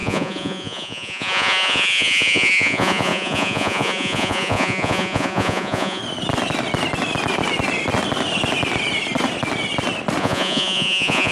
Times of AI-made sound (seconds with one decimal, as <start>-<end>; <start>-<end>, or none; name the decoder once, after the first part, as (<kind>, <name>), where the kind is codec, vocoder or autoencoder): 0.0-6.0 (vocoder, Vocos); 10.2-11.3